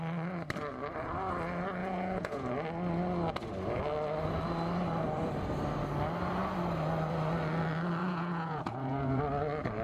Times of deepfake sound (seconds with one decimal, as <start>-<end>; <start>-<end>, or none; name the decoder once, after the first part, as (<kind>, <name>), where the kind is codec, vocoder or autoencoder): 1.8-2.5 (vocoder, Vocos); 8.0-9.2